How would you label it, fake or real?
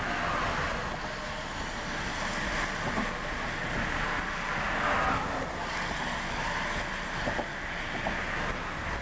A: real